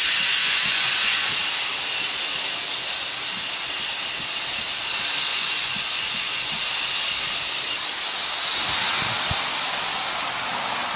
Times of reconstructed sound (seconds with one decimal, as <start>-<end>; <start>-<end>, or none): 0.4-1.3; 5.3-6.6